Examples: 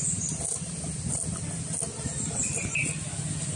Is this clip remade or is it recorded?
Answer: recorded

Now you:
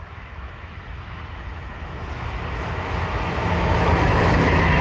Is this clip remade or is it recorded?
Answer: remade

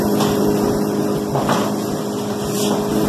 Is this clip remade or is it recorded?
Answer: recorded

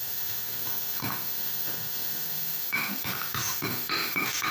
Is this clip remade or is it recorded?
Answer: remade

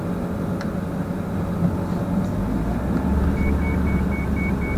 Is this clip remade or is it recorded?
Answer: recorded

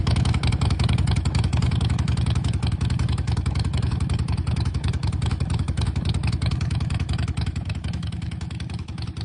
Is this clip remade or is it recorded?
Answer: remade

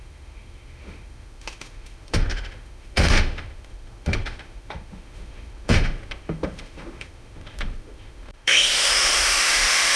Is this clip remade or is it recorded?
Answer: remade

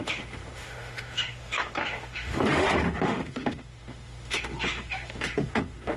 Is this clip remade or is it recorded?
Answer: remade